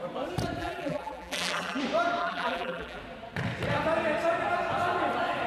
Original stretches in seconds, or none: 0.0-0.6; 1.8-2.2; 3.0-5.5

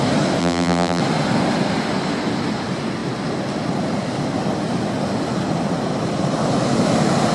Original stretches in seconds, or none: 0.0-0.4; 1.0-7.3